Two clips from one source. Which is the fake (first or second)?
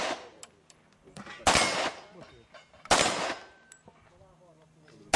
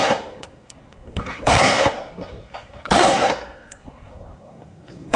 second